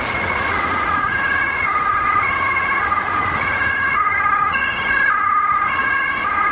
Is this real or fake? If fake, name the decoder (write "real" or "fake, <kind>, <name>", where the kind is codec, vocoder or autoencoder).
fake, vocoder, Vocos